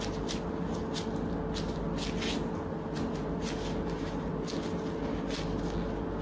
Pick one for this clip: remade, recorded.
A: recorded